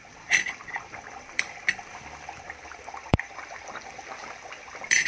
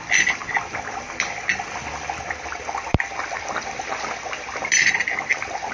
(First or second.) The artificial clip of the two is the first